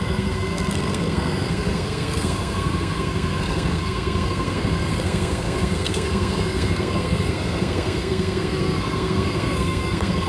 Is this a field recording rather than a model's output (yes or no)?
no